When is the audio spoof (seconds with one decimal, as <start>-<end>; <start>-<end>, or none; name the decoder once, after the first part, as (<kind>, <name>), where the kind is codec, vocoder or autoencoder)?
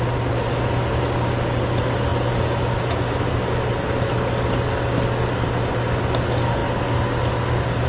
none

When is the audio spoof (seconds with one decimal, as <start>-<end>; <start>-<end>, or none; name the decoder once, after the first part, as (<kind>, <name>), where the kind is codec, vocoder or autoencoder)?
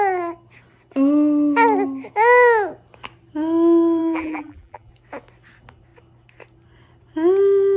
4.0-4.9 (vocoder, BigVGAN v2)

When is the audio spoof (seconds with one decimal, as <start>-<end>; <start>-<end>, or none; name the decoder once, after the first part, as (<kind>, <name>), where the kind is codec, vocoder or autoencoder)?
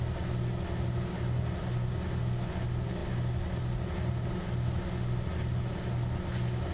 none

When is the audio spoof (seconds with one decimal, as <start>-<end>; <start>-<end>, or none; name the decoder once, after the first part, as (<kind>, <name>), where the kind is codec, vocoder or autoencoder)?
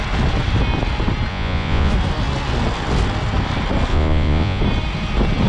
1.3-1.9 (vocoder, Vocos); 3.9-4.6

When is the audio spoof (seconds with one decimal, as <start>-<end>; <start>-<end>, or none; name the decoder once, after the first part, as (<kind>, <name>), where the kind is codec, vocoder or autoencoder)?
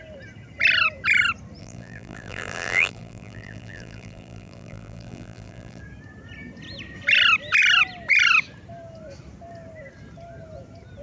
1.6-5.8 (vocoder, BigVGAN v2)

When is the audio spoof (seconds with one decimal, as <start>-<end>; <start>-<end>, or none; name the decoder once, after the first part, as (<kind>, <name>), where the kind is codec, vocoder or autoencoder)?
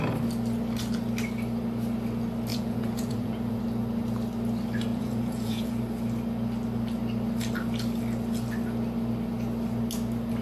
2.5-3.6 (vocoder, Vocos); 4.9-5.8